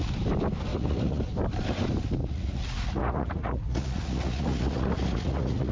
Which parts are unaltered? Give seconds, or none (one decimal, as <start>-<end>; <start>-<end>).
0.0-0.7; 1.2-2.2